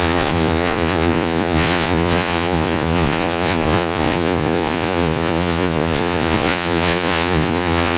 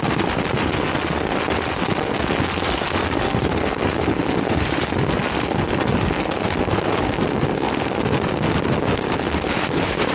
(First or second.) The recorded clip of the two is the second